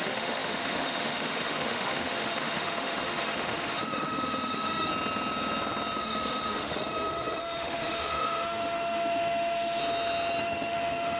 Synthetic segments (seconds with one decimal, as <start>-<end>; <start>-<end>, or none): 0.0-4.9; 6.0-9.8; 10.4-11.2

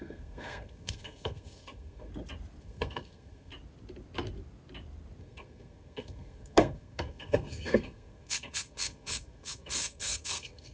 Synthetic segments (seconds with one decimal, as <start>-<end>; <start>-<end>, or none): 0.0-2.1; 2.6-3.5; 5.2-10.7

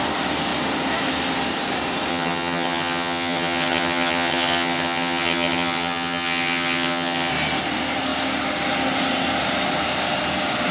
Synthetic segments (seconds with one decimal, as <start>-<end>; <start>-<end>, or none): 2.1-7.3

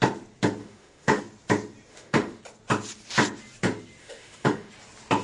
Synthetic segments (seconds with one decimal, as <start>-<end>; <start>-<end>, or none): 0.6-1.2; 1.9-2.4; 4.0-4.7

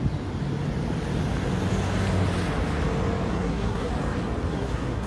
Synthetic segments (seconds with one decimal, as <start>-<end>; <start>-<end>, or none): 3.3-3.9; 4.5-5.1